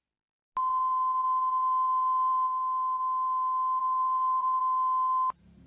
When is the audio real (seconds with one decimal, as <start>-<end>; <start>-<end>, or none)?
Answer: 0.0-3.8; 4.6-5.7